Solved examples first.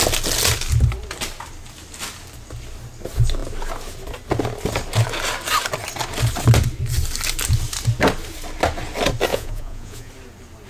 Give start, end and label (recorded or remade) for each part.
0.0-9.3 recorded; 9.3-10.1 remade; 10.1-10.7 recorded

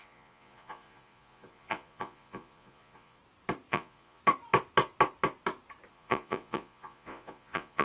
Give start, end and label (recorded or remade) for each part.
0.0-3.2 remade; 3.2-3.7 recorded; 3.7-4.2 remade; 4.2-5.9 recorded; 5.9-7.8 remade

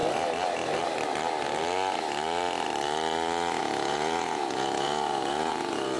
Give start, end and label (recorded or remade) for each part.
0.0-3.6 recorded; 3.6-6.0 remade

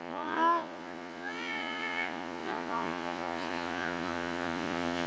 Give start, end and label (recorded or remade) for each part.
0.0-5.1 remade